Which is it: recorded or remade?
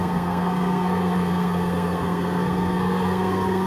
remade